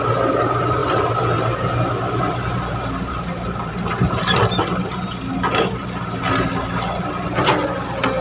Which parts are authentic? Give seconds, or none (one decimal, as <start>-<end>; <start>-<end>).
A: 0.0-8.2